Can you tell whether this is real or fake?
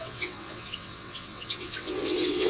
fake